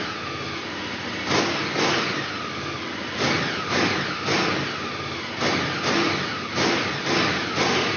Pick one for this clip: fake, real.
real